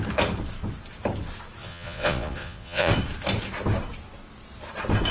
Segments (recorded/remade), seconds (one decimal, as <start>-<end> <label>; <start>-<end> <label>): 0.0-1.6 recorded; 1.6-2.9 remade; 2.9-5.1 recorded